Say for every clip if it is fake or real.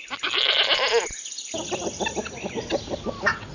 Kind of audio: real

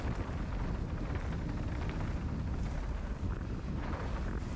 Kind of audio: real